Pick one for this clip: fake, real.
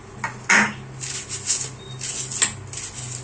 real